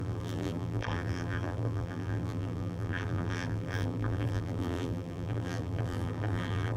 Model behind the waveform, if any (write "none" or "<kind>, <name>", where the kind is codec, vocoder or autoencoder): vocoder, BigVGAN v2